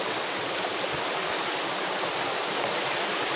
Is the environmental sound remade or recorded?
recorded